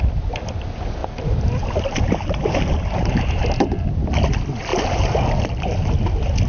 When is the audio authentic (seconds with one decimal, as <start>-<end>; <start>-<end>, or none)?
0.0-1.0; 3.4-6.5